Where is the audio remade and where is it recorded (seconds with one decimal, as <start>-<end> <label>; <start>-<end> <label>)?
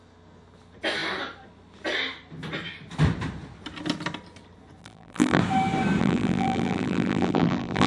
0.0-4.8 recorded; 4.8-5.4 remade; 5.4-6.0 recorded; 6.0-7.9 remade